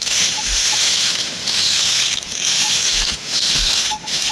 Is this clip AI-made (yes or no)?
yes